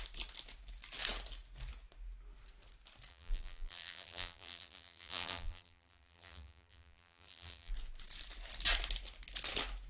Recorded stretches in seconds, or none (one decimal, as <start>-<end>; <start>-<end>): 0.0-3.1; 7.7-9.9